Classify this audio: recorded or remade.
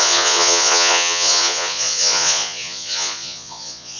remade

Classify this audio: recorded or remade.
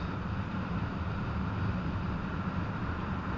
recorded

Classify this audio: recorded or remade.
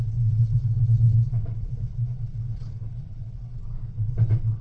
remade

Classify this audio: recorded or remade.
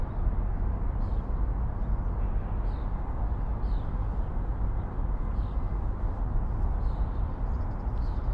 recorded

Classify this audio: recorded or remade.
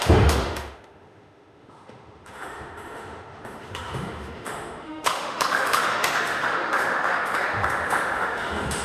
remade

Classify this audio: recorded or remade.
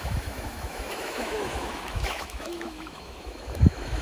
remade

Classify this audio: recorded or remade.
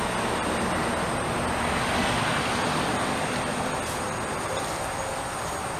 recorded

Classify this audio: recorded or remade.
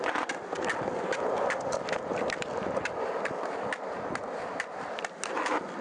recorded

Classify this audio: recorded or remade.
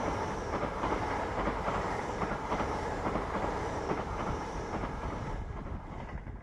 remade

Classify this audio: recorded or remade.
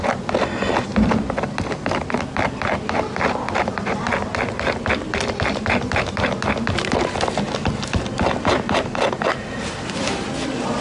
recorded